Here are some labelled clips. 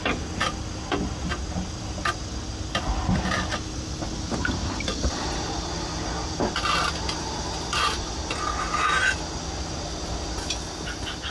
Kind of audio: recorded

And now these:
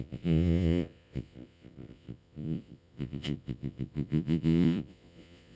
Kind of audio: remade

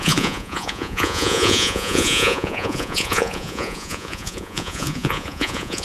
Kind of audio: remade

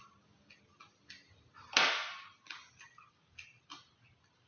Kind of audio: recorded